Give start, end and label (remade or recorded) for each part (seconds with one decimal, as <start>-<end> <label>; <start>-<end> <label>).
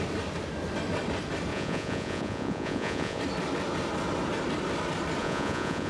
0.0-1.5 recorded; 1.5-3.2 remade; 3.2-5.2 recorded; 5.2-5.9 remade